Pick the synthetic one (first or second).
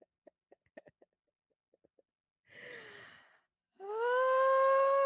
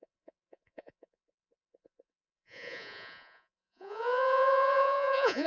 second